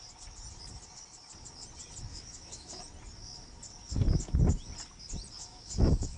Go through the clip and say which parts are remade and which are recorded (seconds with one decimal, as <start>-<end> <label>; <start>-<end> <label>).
0.0-2.1 recorded; 2.1-2.8 remade; 2.8-5.4 recorded; 5.4-6.2 remade